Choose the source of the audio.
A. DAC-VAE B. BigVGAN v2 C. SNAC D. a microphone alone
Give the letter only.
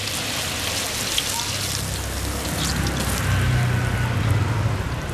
D